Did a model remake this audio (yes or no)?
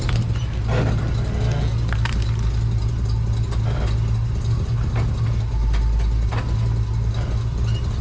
no